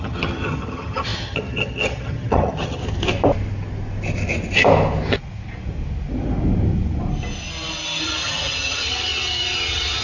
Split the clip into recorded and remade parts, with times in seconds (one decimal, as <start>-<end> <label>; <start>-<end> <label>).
0.0-2.8 remade; 2.8-8.0 recorded; 8.0-10.0 remade